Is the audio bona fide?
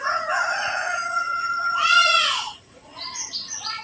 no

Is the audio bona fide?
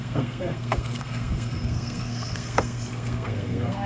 no